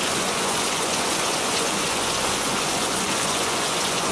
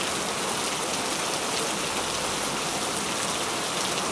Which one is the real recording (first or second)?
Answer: second